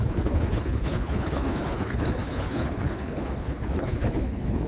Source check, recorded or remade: remade